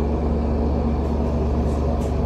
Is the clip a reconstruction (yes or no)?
no